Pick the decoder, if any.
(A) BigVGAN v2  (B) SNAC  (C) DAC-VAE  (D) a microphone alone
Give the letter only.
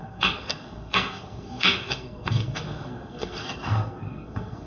B